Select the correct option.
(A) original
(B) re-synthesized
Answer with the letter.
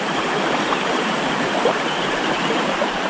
B